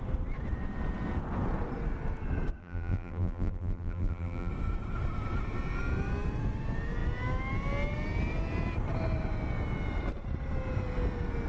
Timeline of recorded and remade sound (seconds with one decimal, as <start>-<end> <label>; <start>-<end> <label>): 0.0-2.6 recorded; 2.6-4.5 remade; 4.5-11.5 recorded